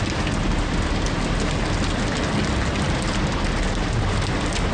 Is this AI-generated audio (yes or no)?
no